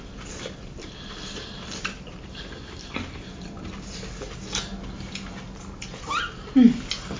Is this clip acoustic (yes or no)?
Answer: yes